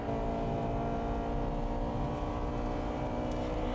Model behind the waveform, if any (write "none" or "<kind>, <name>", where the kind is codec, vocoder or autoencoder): none